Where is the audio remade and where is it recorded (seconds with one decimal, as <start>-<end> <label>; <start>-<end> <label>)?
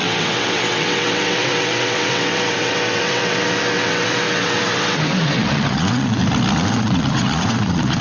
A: 0.0-6.2 remade; 6.2-6.7 recorded; 6.7-8.0 remade